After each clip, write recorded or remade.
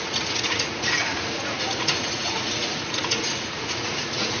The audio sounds remade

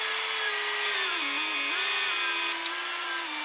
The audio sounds recorded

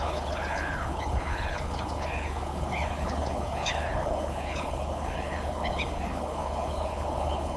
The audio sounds remade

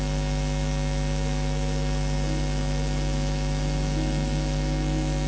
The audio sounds remade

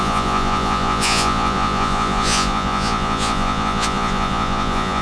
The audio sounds remade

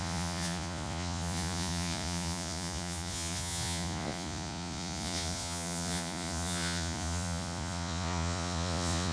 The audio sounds remade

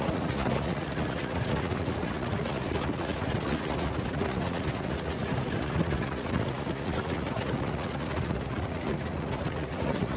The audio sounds remade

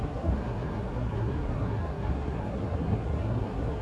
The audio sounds remade